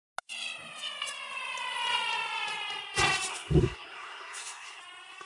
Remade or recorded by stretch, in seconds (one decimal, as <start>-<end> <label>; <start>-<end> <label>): 0.0-3.3 recorded; 3.3-4.8 remade; 4.8-5.3 recorded